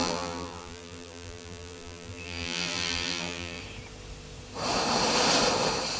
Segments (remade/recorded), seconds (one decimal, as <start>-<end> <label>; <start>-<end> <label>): 0.0-3.6 remade; 3.6-6.0 recorded